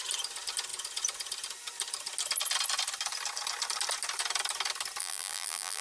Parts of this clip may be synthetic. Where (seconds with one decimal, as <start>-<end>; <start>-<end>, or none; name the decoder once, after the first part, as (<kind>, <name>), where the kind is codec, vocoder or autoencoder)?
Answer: 5.0-5.8 (vocoder, BigVGAN v2)

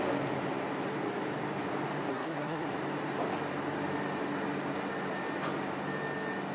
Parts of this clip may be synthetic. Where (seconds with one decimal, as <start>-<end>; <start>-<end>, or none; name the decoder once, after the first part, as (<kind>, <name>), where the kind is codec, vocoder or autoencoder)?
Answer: 2.1-2.7 (codec, SNAC)

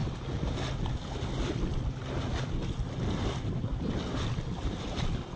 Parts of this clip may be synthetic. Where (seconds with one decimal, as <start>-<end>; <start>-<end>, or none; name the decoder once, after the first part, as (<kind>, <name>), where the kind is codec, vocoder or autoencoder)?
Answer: none

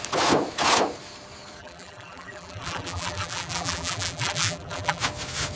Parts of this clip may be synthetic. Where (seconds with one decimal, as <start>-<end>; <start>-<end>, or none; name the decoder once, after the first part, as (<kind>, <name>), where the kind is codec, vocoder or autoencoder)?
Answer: 1.6-5.0 (vocoder, BigVGAN v2)

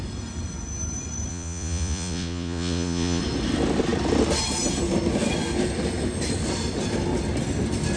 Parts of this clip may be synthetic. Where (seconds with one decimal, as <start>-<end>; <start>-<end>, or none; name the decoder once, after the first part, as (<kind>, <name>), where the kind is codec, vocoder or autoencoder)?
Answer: 1.3-3.2 (vocoder, Vocos)

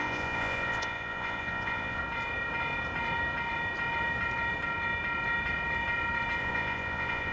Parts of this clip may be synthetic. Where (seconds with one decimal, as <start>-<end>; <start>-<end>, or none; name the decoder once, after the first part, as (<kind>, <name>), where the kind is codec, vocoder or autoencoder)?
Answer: 0.0-2.0 (vocoder, Vocos); 6.4-7.3